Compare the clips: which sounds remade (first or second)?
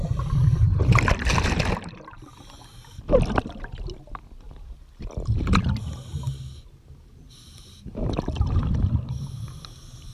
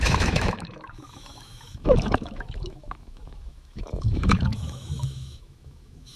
second